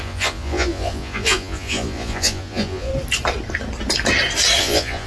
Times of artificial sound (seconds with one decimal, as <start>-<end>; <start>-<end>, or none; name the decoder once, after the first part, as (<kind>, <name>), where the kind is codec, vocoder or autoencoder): 0.0-2.9 (vocoder, Vocos); 4.6-5.1